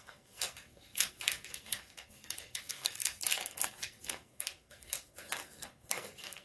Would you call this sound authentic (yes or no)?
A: no